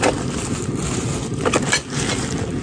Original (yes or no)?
yes